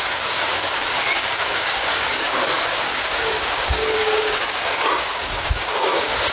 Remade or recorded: remade